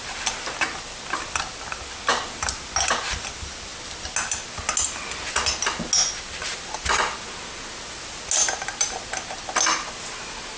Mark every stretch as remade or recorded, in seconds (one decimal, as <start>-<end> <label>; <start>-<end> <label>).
0.0-10.6 recorded